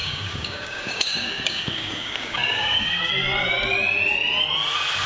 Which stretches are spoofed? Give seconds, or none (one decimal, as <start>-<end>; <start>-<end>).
0.0-3.1

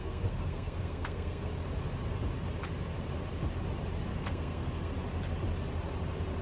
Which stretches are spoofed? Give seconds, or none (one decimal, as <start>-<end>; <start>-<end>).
0.0-1.5; 4.1-4.9

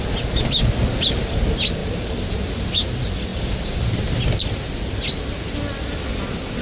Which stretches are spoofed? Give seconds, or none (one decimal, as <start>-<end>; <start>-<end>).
1.8-2.7; 3.3-4.2

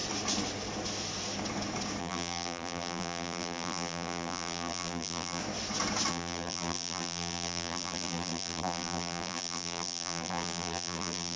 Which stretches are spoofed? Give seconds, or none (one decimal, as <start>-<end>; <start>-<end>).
2.0-5.4; 6.1-11.4

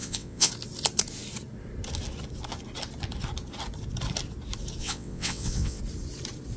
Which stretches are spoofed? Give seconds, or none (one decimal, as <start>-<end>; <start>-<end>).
0.0-0.5; 4.8-5.8

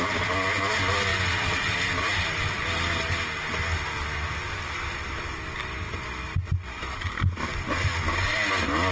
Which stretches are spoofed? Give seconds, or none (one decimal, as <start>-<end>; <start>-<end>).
none

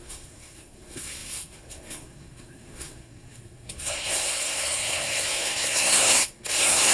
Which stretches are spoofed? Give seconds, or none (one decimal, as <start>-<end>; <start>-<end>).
0.0-6.9

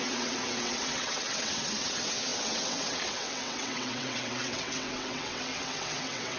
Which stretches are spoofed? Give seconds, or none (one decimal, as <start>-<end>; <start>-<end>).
0.0-6.4